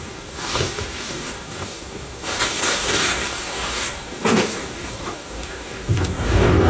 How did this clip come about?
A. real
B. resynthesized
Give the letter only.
B